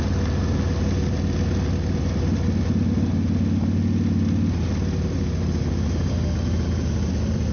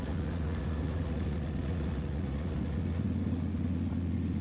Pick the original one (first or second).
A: first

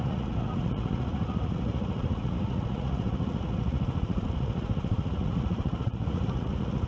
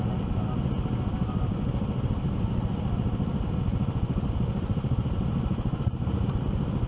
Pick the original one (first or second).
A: second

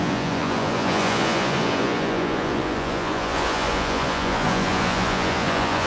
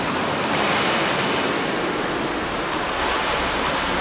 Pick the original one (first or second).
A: second